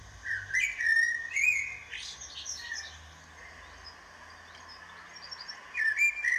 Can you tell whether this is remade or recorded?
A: recorded